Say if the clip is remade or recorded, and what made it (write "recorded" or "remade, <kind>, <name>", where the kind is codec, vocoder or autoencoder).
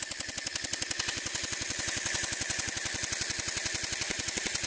recorded